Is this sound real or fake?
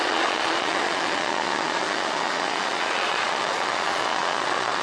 fake